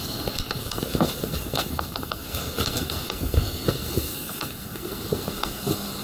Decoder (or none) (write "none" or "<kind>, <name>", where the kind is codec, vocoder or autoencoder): codec, SNAC